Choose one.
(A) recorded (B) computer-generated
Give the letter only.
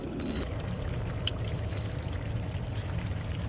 A